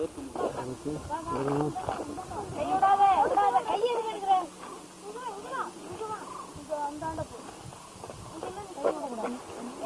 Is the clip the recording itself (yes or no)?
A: yes